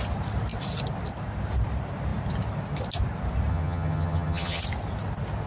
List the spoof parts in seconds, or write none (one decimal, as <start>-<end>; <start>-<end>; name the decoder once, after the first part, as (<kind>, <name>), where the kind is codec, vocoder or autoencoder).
3.5-4.6 (vocoder, HiFi-GAN)